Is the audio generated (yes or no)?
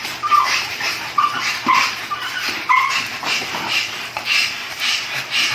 yes